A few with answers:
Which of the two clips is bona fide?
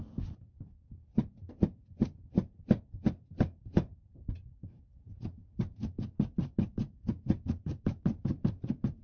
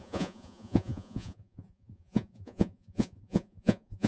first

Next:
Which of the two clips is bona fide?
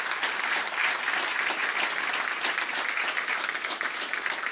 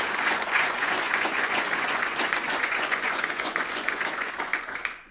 first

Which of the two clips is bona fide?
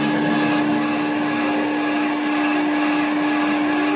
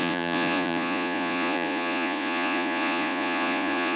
first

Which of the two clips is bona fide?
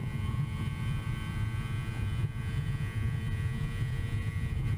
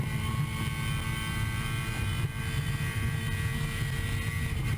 second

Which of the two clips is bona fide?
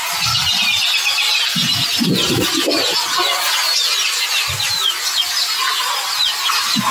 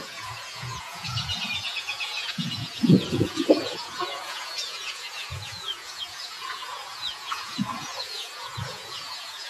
first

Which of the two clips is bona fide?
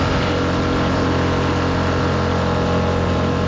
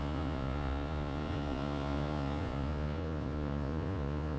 first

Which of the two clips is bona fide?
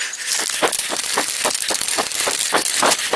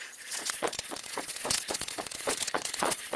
first